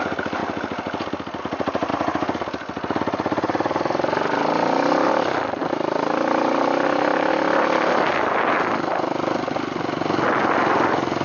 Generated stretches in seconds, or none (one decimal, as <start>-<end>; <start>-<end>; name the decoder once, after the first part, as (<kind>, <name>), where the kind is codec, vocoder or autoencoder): none